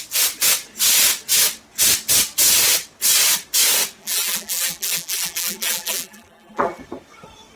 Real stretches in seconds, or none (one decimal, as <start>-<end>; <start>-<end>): 0.0-4.0; 6.8-7.6